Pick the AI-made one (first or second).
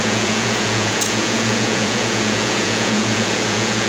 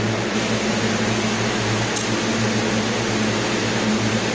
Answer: first